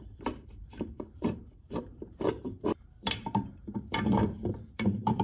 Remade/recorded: remade